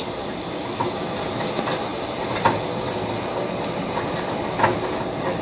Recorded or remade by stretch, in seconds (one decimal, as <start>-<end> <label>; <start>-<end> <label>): 0.0-5.4 recorded